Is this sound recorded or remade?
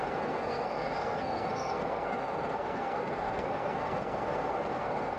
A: remade